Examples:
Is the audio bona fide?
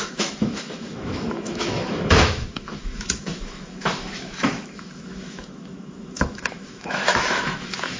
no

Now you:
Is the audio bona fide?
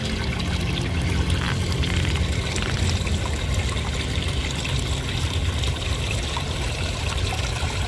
yes